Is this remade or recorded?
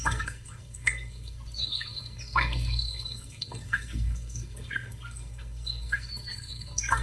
remade